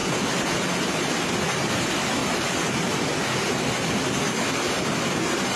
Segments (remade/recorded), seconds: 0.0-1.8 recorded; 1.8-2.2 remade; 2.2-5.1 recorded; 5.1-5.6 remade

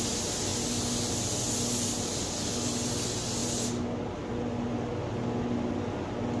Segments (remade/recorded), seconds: 0.0-6.4 recorded

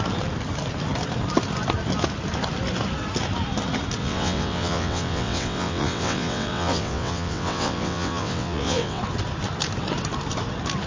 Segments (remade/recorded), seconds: 0.0-4.0 recorded; 4.0-9.0 remade; 9.0-10.9 recorded

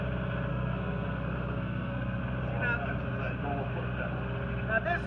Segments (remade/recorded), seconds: 0.0-0.5 recorded; 0.5-2.2 remade; 2.2-5.1 recorded

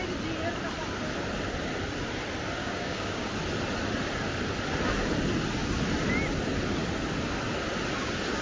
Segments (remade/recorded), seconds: 0.0-2.6 recorded; 2.6-3.3 remade; 3.3-8.4 recorded